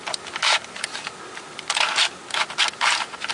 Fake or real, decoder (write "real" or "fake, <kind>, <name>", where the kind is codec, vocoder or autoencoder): real